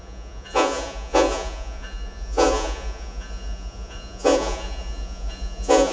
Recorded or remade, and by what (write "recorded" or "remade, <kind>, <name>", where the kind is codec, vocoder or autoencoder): remade, vocoder, Vocos